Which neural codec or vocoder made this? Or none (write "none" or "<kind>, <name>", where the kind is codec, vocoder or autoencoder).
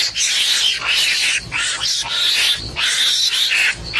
none